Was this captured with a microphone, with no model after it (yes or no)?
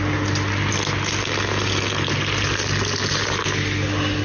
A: yes